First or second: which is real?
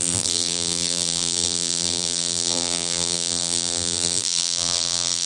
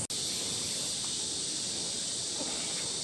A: second